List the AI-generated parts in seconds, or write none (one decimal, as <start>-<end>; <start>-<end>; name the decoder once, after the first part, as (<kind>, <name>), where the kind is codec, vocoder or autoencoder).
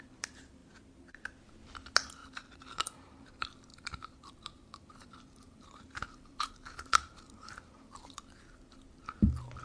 2.2-3.3 (vocoder, BigVGAN v2); 3.7-8.1